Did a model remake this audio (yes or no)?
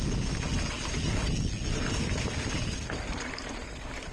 no